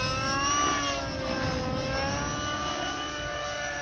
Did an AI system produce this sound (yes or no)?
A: no